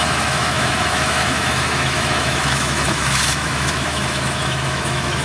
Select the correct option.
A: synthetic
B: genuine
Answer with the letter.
A